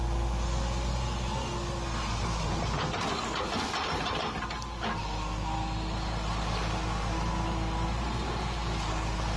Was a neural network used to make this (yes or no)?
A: no